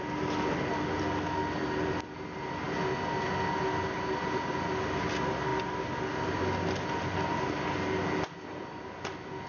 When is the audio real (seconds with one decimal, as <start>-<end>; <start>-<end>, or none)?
0.0-9.5